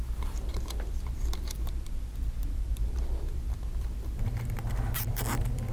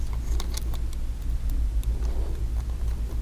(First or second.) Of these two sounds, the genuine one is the second